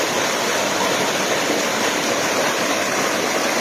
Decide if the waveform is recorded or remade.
recorded